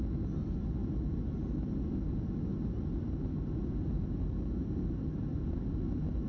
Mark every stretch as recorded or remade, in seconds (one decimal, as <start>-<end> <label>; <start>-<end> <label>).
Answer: 0.0-6.3 recorded